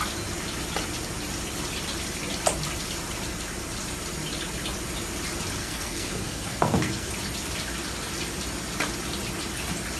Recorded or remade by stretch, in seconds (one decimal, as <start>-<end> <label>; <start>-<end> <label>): 0.0-5.6 recorded; 5.6-7.1 remade; 7.1-10.0 recorded

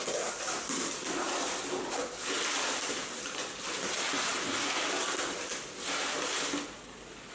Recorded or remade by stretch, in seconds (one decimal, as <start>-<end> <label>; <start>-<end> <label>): 0.0-7.3 recorded

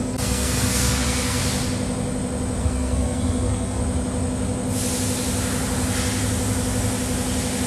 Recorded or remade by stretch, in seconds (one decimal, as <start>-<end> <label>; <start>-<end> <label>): 0.0-1.4 remade; 1.4-2.6 recorded; 2.6-3.8 remade; 3.8-7.7 recorded

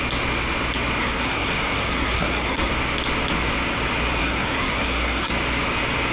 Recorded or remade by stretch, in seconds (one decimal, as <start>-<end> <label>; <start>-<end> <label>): 0.0-1.0 recorded; 1.0-2.7 remade; 2.7-4.2 recorded; 4.2-5.3 remade; 5.3-6.1 recorded

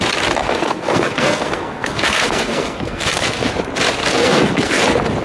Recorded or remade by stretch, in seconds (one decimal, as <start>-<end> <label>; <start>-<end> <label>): 0.0-0.4 recorded; 0.4-3.5 remade; 3.5-4.0 recorded; 4.0-4.8 remade; 4.8-5.2 recorded